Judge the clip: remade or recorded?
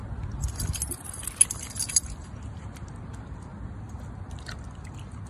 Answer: recorded